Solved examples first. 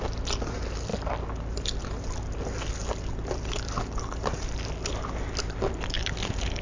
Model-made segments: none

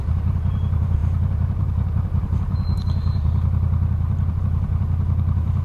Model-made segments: 0.0-5.6

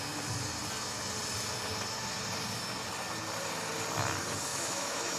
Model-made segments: 4.5-5.2

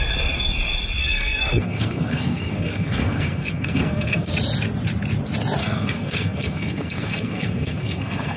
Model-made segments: 1.0-4.3; 5.6-8.4

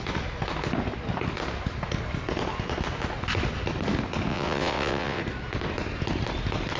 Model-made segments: 4.3-5.2

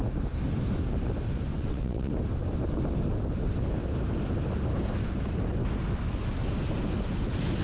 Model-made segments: 1.5-2.1

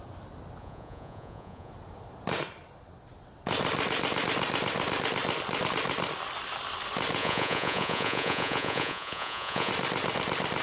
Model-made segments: 0.6-1.7; 7.2-9.7

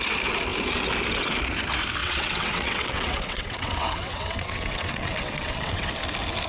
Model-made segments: 2.0-5.9